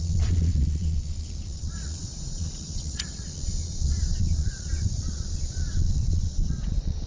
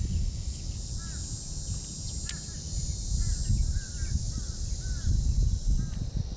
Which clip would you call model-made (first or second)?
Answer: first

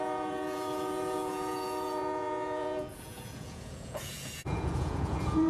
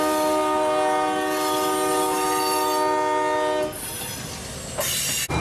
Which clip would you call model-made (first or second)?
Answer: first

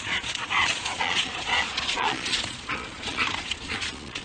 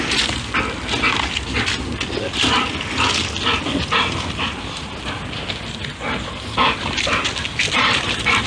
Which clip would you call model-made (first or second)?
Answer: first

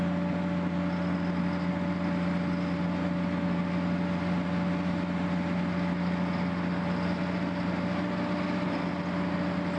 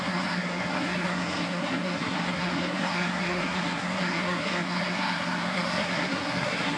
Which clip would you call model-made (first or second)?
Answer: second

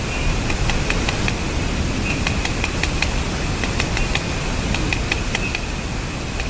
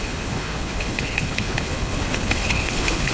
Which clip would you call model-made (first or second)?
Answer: second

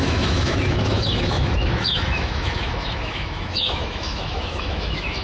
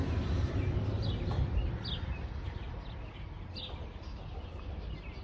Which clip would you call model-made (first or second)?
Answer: first